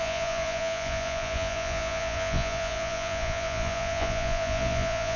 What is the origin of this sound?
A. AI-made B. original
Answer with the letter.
A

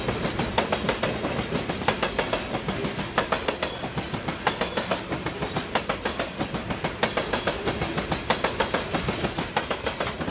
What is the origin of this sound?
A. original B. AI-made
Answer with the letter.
A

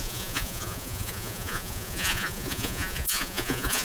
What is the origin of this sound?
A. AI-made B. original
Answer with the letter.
A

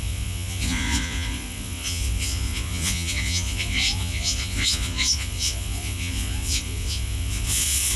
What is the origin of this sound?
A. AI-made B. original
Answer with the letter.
A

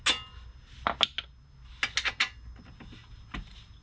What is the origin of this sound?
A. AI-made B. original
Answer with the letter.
B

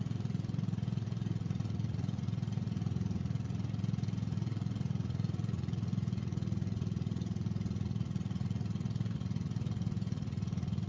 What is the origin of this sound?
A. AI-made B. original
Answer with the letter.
A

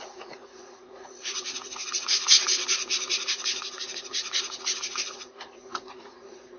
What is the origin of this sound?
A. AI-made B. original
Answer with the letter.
A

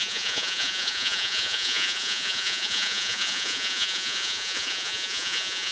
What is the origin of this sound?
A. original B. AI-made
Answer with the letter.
B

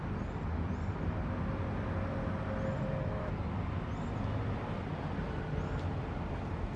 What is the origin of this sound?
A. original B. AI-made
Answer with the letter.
A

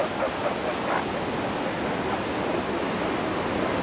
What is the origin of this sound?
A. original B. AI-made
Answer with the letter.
A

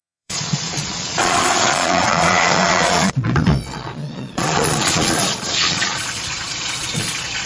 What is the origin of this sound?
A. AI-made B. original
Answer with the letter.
A